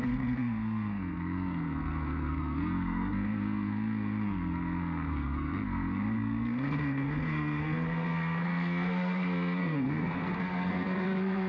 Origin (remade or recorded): remade